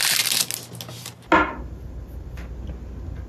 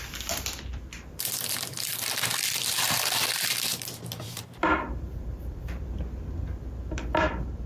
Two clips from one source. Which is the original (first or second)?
first